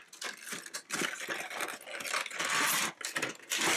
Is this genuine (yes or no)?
yes